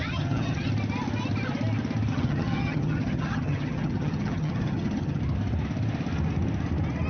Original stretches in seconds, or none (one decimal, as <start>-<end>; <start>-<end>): 0.7-2.1; 5.2-7.1